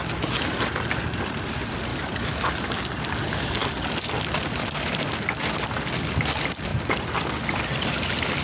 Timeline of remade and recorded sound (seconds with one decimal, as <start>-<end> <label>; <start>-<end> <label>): 0.0-0.6 remade; 0.6-1.9 recorded; 1.9-2.5 remade; 2.5-8.4 recorded